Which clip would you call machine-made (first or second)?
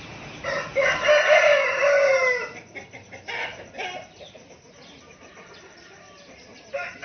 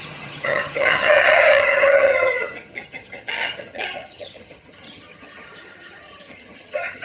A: second